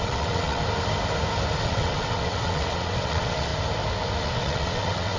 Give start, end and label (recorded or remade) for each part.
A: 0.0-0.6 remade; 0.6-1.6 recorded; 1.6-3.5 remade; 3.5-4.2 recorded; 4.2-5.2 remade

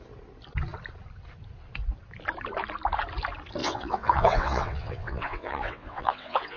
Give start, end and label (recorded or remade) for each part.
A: 0.0-3.6 recorded; 3.6-6.6 remade

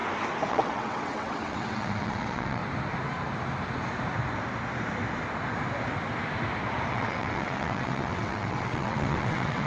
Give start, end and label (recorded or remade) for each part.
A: 0.0-0.5 recorded; 0.5-2.6 remade; 2.6-6.9 recorded; 6.9-9.7 remade